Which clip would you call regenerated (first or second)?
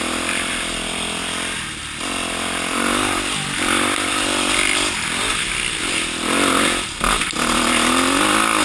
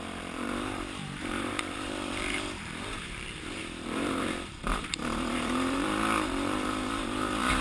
second